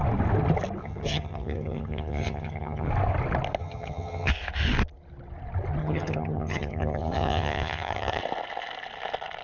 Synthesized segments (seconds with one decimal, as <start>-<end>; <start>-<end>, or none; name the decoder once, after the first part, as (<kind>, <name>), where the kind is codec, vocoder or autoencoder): 0.8-2.9 (vocoder, HiFi-GAN); 3.6-4.3; 5.8-8.2